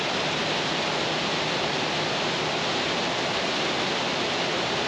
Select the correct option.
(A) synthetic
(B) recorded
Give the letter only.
B